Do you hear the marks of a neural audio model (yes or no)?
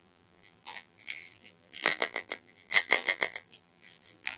yes